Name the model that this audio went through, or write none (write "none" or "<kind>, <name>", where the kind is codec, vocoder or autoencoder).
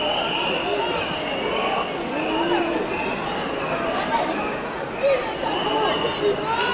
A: none